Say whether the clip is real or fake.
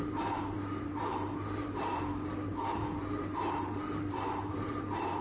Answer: fake